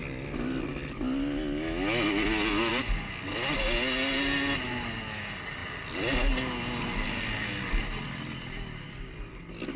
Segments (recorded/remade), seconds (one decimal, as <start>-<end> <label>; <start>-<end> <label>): 0.0-9.8 recorded